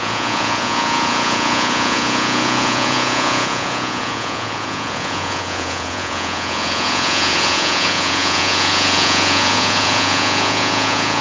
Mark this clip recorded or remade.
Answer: remade